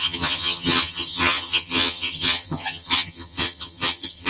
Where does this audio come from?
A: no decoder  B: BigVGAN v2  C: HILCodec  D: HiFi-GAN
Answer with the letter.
D